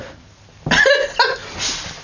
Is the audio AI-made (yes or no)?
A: no